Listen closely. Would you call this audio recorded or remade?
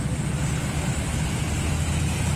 recorded